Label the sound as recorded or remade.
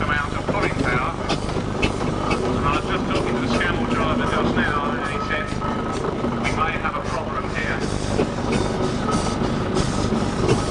recorded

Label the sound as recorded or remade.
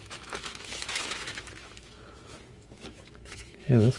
remade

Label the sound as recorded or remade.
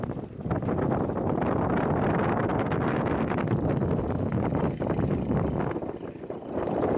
recorded